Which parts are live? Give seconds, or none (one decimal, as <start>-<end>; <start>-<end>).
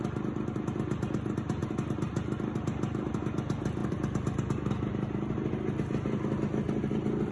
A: 0.0-3.8; 4.7-7.3